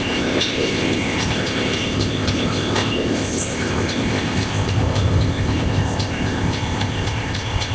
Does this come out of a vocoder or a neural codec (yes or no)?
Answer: yes